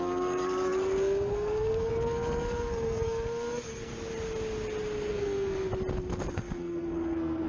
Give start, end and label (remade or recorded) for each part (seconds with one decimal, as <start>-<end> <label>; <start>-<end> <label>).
0.0-3.9 remade; 3.9-5.1 recorded; 5.1-5.7 remade; 5.7-6.3 recorded; 6.3-7.5 remade